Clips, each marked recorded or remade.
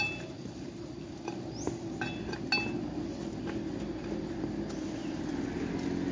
recorded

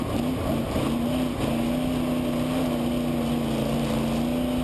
recorded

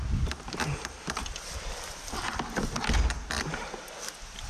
recorded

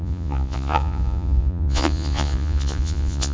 remade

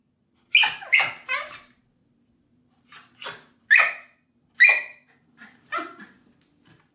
recorded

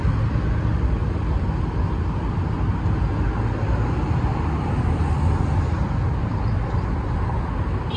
recorded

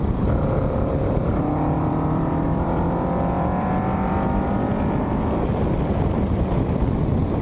remade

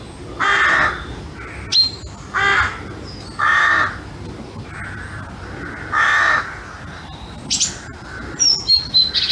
recorded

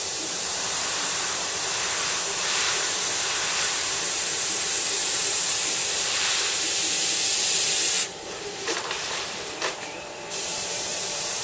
remade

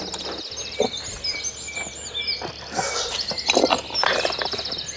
recorded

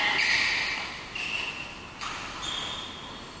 recorded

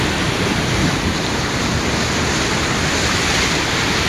recorded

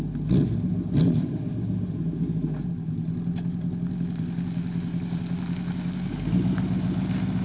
recorded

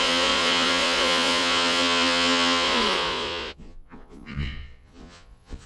remade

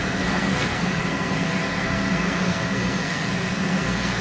remade